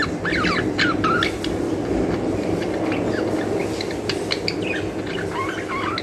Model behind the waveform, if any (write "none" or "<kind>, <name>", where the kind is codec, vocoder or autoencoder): none